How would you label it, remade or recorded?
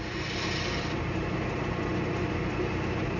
recorded